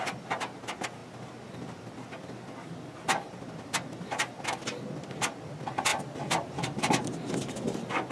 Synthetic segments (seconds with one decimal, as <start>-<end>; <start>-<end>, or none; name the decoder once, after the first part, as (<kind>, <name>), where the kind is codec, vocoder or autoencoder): none